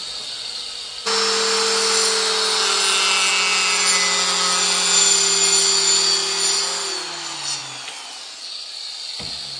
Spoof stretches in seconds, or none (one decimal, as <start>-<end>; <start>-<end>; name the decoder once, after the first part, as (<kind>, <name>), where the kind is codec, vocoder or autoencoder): none